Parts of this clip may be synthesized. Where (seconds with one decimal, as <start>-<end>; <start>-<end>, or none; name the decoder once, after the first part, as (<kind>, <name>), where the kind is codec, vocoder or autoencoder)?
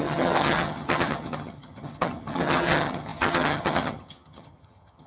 0.0-5.1 (vocoder, HiFi-GAN)